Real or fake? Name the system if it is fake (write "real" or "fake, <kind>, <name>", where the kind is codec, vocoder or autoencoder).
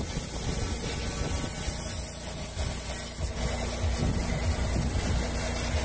real